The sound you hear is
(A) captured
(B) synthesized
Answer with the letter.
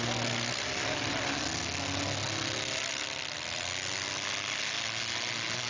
A